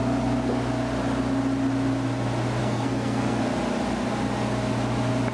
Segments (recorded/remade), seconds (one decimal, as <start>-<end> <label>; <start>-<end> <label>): 0.0-2.6 recorded; 2.6-3.4 remade; 3.4-5.3 recorded